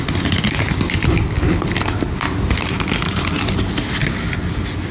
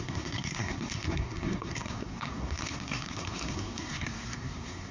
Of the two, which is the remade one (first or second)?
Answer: second